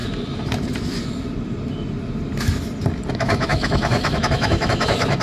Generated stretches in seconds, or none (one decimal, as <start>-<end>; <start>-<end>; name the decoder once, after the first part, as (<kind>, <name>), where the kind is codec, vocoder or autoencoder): 3.1-5.2 (autoencoder, DAC-VAE)